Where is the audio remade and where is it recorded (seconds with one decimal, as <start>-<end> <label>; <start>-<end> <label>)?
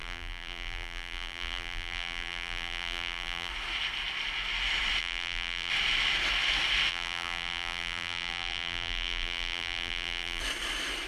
0.0-3.5 remade; 3.5-5.0 recorded; 5.0-5.7 remade; 5.7-6.9 recorded; 6.9-10.4 remade; 10.4-11.1 recorded